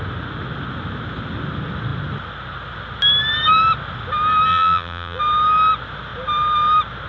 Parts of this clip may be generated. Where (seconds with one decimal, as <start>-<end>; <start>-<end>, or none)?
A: 4.5-5.2